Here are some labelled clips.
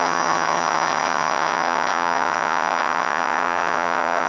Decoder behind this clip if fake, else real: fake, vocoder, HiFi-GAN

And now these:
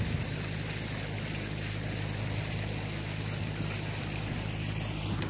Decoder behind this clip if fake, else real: real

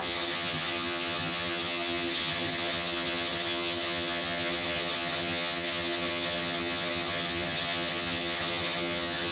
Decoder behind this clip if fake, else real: fake, vocoder, HiFi-GAN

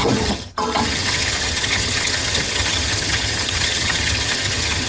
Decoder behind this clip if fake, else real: fake, vocoder, HiFi-GAN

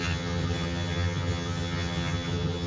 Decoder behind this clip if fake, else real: fake, vocoder, HiFi-GAN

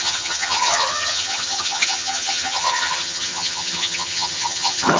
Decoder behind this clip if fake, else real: fake, vocoder, HiFi-GAN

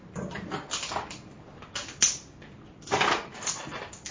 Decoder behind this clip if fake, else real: real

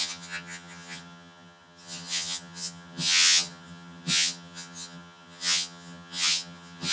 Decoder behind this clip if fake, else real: fake, vocoder, HiFi-GAN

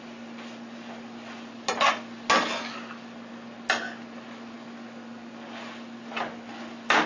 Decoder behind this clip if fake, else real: real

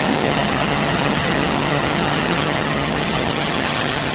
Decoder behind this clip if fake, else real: fake, vocoder, HiFi-GAN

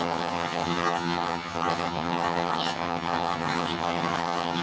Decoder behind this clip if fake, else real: fake, vocoder, HiFi-GAN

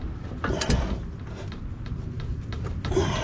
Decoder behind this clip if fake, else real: real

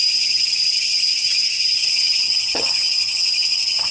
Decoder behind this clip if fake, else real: fake, vocoder, HiFi-GAN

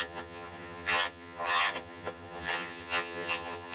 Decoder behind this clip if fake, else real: fake, vocoder, HiFi-GAN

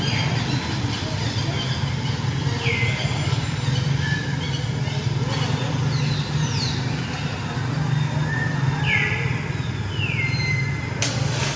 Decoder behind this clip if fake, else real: real